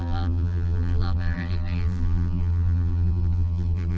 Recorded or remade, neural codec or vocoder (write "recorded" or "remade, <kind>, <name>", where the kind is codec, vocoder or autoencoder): remade, vocoder, BigVGAN v2